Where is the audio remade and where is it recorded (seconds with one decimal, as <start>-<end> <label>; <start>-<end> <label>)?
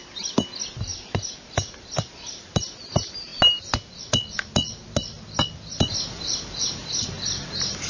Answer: 0.0-7.9 recorded